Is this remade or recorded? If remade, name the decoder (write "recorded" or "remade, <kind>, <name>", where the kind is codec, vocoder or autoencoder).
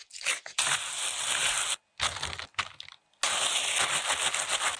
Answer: recorded